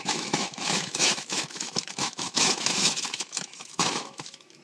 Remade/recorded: remade